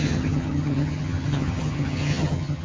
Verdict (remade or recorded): remade